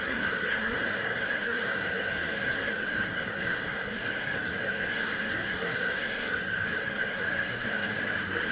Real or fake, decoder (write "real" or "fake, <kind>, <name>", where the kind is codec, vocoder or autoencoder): fake, codec, SNAC